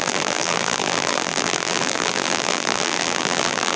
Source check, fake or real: fake